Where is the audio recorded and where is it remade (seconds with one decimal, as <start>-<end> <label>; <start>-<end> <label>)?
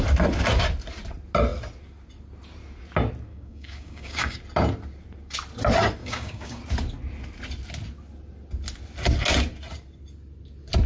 0.0-3.3 recorded; 3.3-4.4 remade; 4.4-6.0 recorded; 6.0-6.6 remade; 6.6-10.9 recorded